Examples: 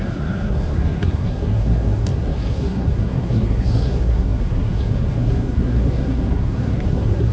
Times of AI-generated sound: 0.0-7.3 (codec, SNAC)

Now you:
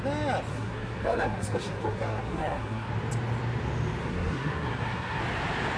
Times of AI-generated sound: 0.5-2.9 (codec, SNAC); 4.0-5.2